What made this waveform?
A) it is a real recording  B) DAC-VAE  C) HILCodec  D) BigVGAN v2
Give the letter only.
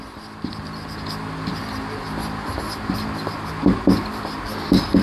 A